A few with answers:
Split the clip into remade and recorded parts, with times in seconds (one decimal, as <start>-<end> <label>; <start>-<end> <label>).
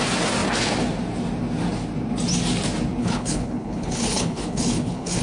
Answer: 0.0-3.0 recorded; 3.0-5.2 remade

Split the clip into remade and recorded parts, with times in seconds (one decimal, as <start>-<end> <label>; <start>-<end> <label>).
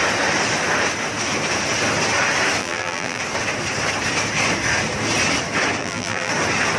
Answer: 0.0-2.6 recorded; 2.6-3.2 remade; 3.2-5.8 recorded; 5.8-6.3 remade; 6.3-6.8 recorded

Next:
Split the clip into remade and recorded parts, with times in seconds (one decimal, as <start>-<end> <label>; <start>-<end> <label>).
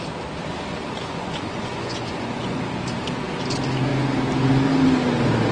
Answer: 0.0-0.7 recorded; 0.7-2.6 remade; 2.6-5.5 recorded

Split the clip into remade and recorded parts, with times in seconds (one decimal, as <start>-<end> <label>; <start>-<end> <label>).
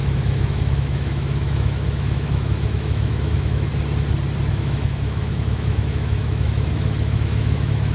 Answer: 0.0-3.7 remade; 3.7-4.5 recorded; 4.5-7.9 remade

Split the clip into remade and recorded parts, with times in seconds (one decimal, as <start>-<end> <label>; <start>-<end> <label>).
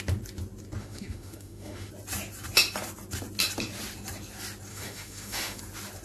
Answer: 0.0-0.8 recorded; 0.8-1.9 remade; 1.9-4.7 recorded; 4.7-5.6 remade; 5.6-6.0 recorded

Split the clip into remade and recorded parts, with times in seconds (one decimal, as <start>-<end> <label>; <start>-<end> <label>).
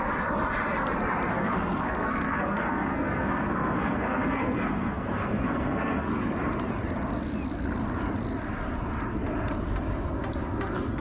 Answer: 0.0-1.3 recorded; 1.3-6.1 remade; 6.1-11.0 recorded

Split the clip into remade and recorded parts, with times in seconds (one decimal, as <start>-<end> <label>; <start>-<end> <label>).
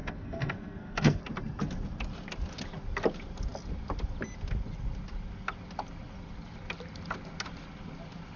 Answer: 0.0-1.2 remade; 1.2-8.4 recorded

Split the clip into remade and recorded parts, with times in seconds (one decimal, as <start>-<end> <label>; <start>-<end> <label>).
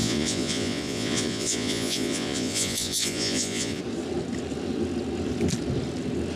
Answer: 0.0-3.8 remade; 3.8-6.4 recorded